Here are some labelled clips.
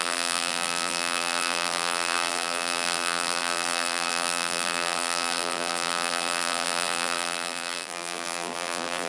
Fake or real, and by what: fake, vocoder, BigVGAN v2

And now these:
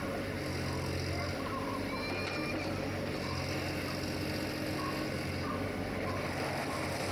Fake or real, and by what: real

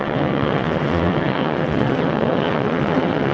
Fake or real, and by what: fake, vocoder, WaveNeXt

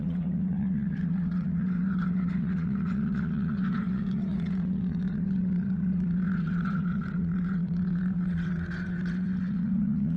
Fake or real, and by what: fake, vocoder, WaveNeXt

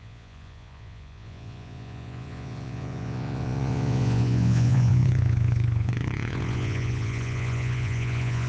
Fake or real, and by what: fake, vocoder, Vocos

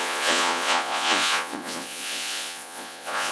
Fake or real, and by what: fake, vocoder, Vocos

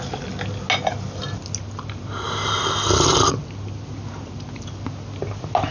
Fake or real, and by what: real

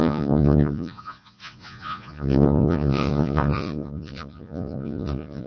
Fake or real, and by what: fake, vocoder, Vocos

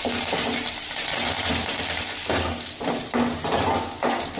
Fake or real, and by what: real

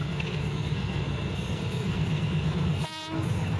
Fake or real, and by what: fake, codec, SNAC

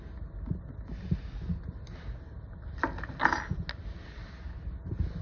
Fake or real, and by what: real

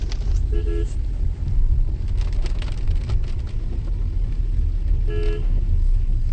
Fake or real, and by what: real